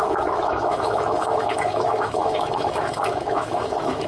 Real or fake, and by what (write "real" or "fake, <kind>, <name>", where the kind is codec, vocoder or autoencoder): fake, autoencoder, DAC-VAE